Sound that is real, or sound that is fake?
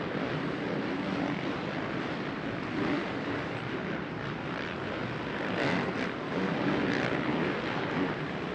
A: fake